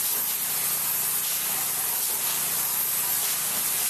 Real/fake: real